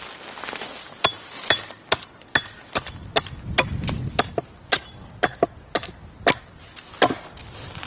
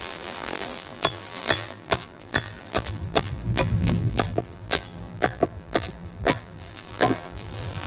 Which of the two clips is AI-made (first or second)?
second